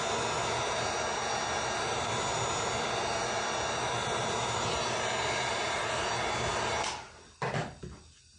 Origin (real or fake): real